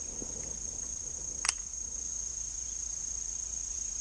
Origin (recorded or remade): recorded